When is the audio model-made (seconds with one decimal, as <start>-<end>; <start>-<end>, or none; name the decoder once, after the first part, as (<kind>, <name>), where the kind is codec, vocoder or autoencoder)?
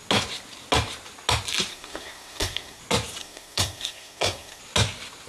1.7-2.8 (codec, SNAC); 3.2-4.6